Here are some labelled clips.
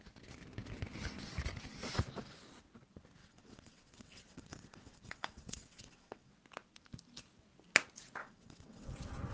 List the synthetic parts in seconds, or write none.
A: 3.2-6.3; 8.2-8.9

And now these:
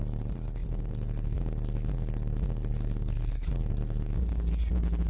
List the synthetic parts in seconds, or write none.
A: none

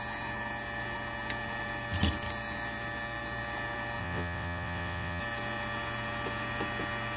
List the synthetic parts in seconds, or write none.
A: 4.0-5.2

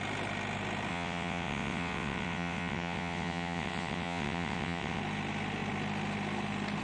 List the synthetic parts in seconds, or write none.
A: 0.9-5.0

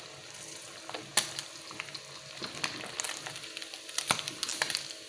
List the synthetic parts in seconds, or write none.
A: none

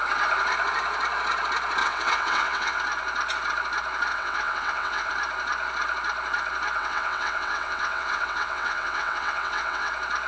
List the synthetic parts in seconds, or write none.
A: 1.8-2.8; 4.1-5.1; 6.8-9.9

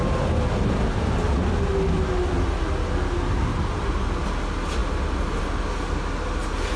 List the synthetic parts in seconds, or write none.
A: none

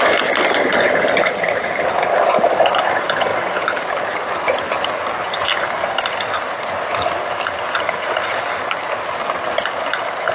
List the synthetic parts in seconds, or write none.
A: none